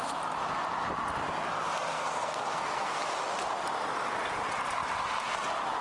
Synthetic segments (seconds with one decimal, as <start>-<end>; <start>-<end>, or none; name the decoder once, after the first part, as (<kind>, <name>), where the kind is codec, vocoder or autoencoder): 1.9-3.0 (codec, SNAC)